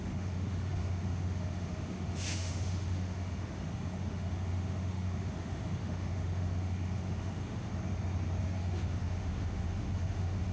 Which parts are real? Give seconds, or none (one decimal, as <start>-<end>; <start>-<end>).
7.7-8.4